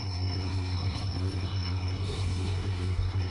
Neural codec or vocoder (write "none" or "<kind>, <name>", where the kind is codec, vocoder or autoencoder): codec, SNAC